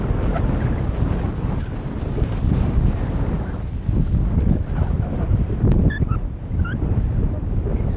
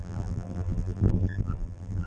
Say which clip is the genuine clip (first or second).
first